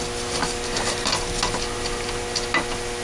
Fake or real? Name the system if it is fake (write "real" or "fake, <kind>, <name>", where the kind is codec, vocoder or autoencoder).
real